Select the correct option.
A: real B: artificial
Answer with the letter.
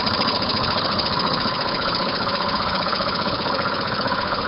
B